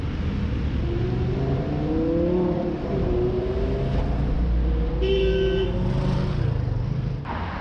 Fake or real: real